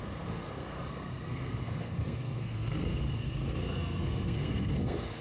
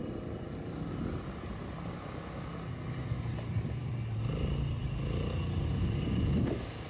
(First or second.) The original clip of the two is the second